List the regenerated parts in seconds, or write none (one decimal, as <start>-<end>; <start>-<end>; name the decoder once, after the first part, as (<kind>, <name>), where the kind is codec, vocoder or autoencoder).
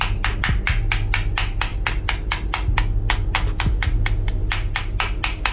none